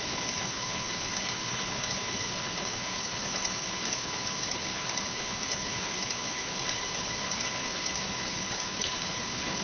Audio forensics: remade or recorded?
remade